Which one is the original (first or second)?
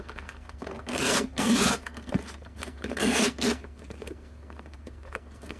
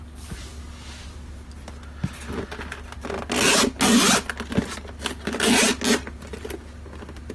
second